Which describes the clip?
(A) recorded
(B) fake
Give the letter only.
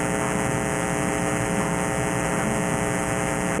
A